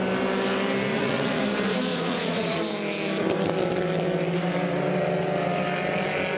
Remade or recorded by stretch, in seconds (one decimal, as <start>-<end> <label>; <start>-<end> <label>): 0.0-0.9 recorded; 0.9-1.4 remade; 1.4-1.9 recorded; 1.9-2.6 remade; 2.6-6.4 recorded